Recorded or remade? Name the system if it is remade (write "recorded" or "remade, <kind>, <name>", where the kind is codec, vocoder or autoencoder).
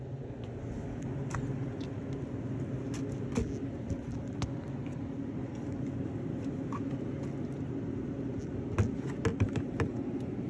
recorded